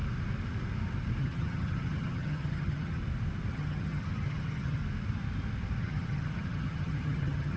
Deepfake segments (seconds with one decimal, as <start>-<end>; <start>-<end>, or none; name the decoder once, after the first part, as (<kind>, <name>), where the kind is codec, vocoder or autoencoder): 1.2-3.0 (vocoder, HiFi-GAN); 3.5-4.8; 5.8-7.6